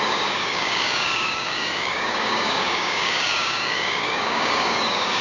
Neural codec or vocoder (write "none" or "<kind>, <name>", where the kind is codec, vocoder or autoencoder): codec, DAC